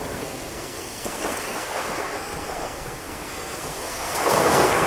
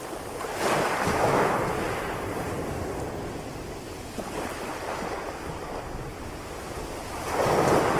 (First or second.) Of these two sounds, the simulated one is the first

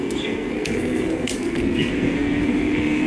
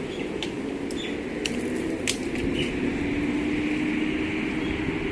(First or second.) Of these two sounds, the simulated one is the first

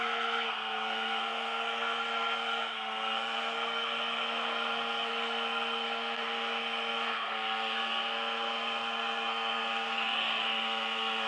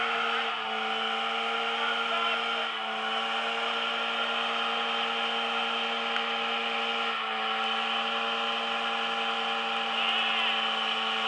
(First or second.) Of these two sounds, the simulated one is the first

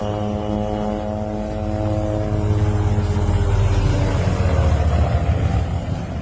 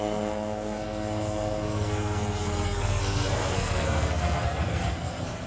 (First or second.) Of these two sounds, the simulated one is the second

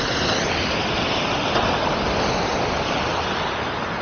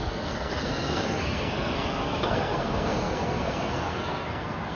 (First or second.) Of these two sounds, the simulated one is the second